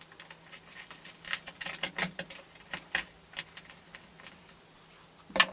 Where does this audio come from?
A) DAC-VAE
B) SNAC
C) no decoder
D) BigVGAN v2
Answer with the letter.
C